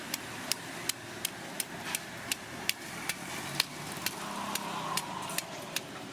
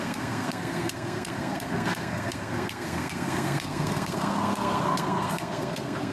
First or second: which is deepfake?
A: second